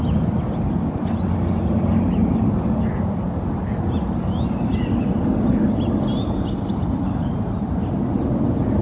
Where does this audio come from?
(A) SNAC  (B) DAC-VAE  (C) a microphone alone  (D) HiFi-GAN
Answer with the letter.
C